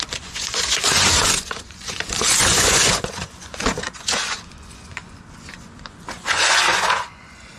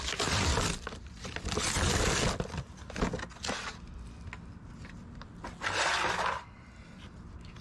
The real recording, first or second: second